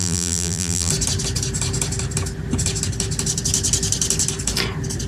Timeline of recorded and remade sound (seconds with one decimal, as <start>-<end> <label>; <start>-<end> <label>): 0.0-0.9 remade; 0.9-5.1 recorded